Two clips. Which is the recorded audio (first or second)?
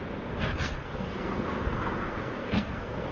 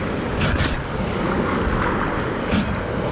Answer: second